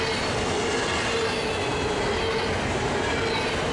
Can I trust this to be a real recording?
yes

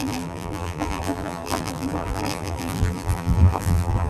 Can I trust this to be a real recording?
no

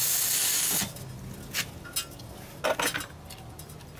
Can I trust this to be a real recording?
yes